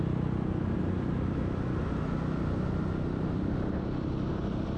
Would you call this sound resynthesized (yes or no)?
no